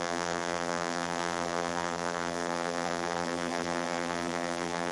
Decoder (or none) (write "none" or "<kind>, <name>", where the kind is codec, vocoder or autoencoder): vocoder, BigVGAN v2